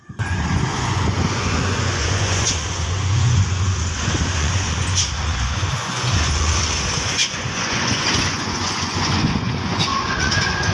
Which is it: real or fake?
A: fake